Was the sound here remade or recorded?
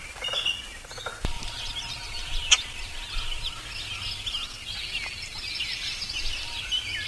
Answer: recorded